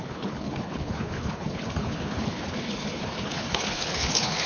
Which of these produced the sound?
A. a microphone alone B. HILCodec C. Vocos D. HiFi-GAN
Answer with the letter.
B